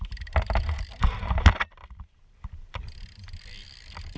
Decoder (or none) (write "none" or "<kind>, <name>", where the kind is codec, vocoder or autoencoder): none